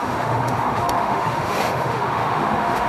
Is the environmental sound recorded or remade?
remade